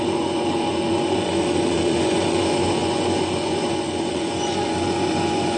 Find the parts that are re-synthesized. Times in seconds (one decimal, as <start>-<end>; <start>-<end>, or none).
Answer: 0.0-5.6

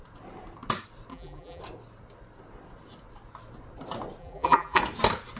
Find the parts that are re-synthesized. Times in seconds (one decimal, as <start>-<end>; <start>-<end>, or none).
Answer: 1.1-1.6; 4.2-4.8

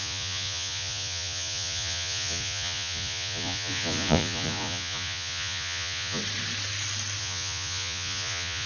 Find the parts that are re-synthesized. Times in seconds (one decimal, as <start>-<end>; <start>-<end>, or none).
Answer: 0.0-6.2; 7.2-8.7

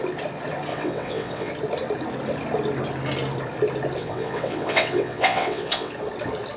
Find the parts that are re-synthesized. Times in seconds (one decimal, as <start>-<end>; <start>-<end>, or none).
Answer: 0.7-1.5; 4.0-5.9

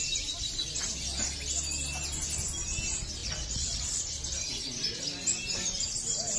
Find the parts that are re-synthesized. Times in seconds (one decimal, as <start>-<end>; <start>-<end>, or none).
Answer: 3.2-4.0

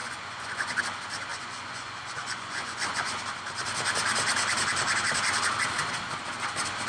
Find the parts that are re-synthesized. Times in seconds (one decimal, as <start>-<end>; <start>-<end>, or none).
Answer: 0.0-0.8; 1.3-3.2

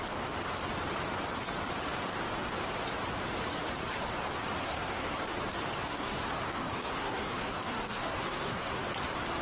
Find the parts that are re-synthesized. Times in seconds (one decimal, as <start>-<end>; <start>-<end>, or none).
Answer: 4.6-5.2; 5.9-8.8